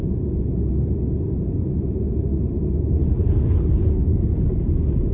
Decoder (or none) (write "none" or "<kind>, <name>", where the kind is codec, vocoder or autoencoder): none